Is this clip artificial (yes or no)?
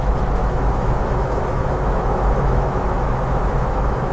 yes